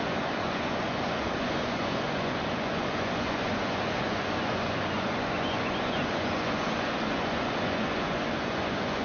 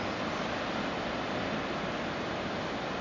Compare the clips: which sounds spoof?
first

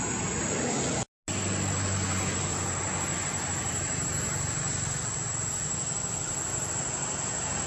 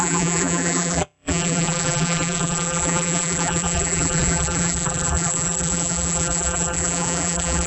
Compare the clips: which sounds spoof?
second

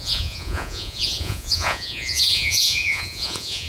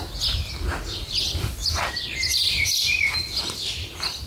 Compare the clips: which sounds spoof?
first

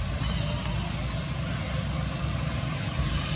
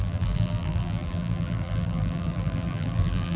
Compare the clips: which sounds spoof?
second